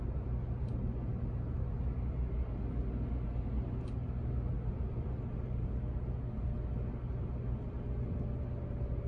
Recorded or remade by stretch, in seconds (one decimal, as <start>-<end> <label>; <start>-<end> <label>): 0.0-9.1 recorded